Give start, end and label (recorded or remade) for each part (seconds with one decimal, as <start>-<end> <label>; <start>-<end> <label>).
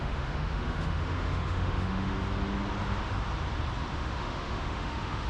0.0-2.1 remade; 2.1-3.9 recorded; 3.9-5.3 remade